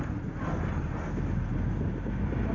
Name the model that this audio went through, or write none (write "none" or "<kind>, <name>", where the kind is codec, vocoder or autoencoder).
none